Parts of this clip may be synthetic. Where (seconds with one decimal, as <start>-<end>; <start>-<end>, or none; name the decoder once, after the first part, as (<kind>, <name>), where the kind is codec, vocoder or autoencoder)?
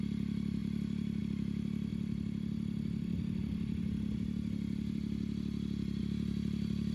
0.0-1.9 (vocoder, BigVGAN v2); 6.0-6.9